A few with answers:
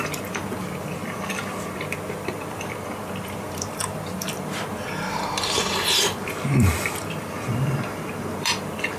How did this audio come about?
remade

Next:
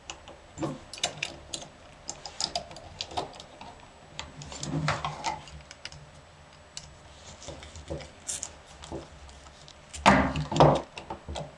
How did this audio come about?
recorded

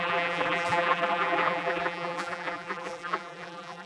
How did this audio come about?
remade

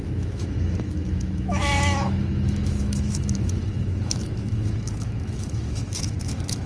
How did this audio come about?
remade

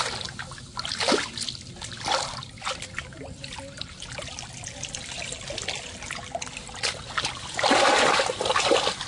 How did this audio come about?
recorded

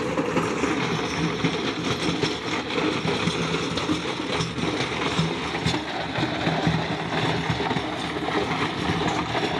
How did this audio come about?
recorded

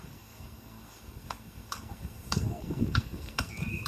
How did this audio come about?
remade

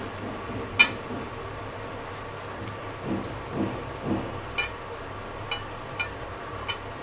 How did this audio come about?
recorded